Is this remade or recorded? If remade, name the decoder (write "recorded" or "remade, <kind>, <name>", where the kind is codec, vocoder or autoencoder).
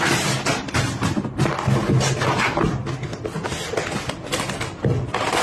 recorded